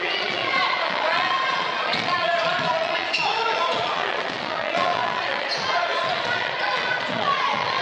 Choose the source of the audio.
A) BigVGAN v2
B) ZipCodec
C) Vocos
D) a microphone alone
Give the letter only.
C